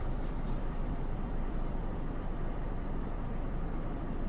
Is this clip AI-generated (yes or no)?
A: yes